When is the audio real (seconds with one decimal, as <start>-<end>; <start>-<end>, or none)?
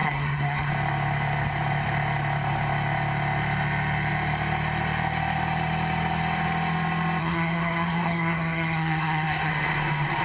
0.7-7.2; 9.5-10.2